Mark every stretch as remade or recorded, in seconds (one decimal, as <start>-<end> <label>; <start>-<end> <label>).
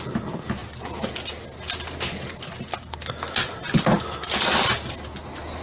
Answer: 0.0-5.6 recorded